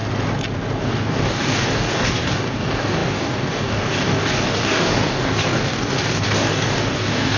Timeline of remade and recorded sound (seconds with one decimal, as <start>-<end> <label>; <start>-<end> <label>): 0.0-0.8 recorded; 0.8-7.4 remade